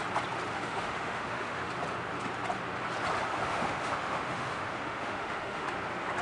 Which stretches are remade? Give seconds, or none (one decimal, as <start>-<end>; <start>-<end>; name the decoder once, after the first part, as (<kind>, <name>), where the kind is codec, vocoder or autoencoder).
0.5-1.7 (autoencoder, DAC-VAE); 3.3-5.7